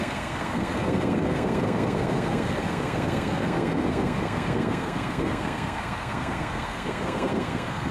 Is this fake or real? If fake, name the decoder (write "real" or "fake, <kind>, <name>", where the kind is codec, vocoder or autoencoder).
fake, codec, SNAC